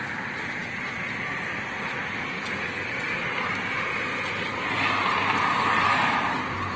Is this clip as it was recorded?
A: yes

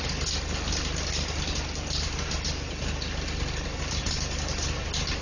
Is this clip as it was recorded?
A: yes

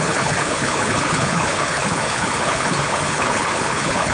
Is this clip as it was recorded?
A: no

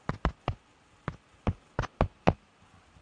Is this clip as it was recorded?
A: yes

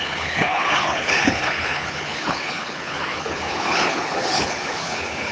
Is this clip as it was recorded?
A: no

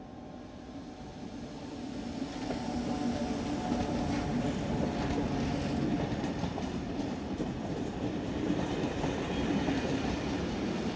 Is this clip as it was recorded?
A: yes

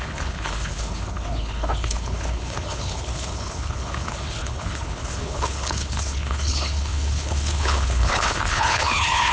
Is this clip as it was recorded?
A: no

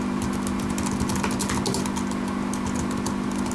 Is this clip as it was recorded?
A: yes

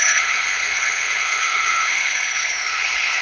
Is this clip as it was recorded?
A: no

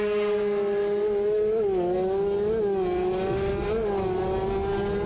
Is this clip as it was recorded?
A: yes